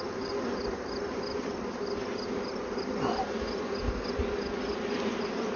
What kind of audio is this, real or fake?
real